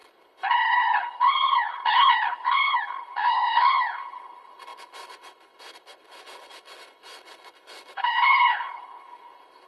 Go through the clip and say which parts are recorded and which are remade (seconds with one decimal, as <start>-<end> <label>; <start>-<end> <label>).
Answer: 0.0-9.7 remade